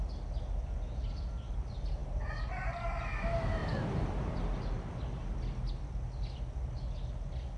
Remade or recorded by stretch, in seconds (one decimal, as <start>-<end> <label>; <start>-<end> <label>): 0.0-7.6 recorded